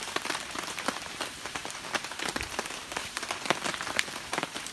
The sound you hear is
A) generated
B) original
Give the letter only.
A